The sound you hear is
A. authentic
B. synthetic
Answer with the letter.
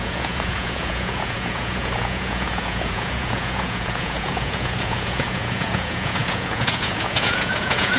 B